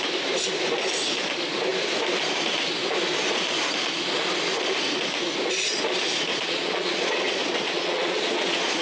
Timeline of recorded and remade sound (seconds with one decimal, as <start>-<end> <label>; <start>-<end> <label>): 0.0-6.3 recorded; 6.3-8.8 remade